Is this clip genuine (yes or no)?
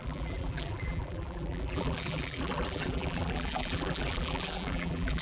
no